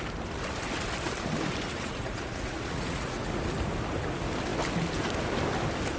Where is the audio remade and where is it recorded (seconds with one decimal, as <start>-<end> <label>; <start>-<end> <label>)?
0.0-1.6 recorded; 1.6-3.3 remade; 3.3-6.0 recorded